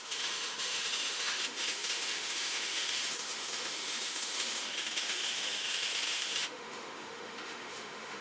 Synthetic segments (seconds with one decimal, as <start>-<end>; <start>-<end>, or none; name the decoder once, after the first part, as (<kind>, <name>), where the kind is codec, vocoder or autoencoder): 0.0-8.2 (autoencoder, DAC-VAE)